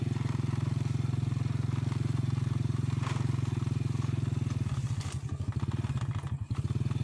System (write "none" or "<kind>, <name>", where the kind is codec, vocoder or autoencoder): none